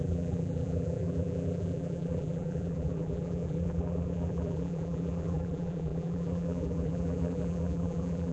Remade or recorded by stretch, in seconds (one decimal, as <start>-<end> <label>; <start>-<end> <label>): 0.0-8.3 remade